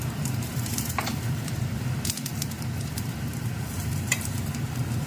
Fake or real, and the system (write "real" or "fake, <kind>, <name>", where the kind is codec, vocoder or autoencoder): fake, vocoder, BigVGAN v2